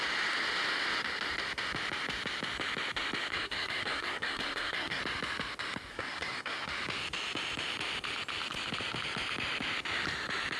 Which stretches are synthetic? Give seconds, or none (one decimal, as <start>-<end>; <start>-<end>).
3.3-5.0; 5.9-6.7